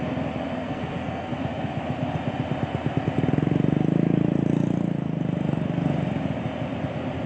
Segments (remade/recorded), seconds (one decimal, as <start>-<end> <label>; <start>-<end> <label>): 0.0-0.6 recorded; 0.6-1.3 remade; 1.3-7.3 recorded